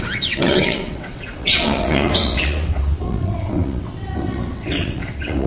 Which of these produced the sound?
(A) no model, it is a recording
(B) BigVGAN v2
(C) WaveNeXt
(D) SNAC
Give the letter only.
C